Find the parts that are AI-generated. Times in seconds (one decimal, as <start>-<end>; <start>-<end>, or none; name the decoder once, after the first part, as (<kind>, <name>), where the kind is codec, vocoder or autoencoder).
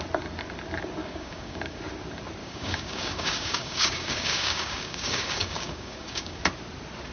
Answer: 1.0-1.8 (codec, DAC); 2.4-6.4